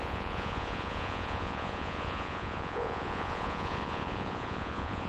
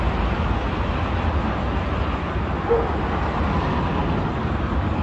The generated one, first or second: first